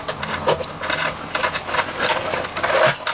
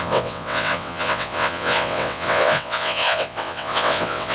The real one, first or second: first